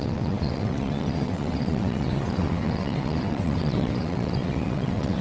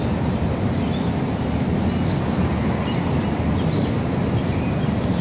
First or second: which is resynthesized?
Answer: first